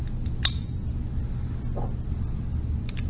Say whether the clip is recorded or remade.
recorded